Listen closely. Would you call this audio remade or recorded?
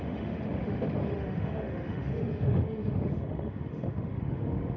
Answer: remade